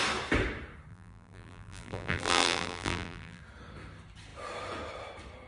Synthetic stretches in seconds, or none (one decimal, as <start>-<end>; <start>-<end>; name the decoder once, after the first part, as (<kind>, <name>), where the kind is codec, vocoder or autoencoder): 0.9-3.4 (vocoder, BigVGAN v2)